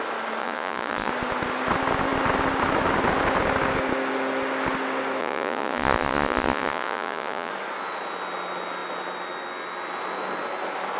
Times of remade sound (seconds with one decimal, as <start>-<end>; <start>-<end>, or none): 0.4-1.1; 5.2-7.5